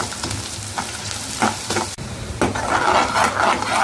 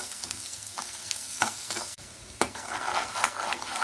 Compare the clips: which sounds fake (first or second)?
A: second